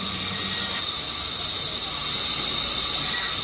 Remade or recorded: recorded